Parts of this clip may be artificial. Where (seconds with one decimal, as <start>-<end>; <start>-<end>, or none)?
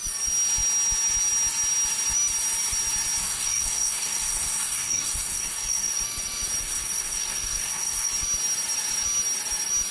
3.2-6.0; 6.6-8.1